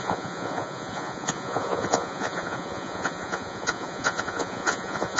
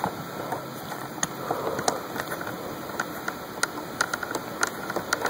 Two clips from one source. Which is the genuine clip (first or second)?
second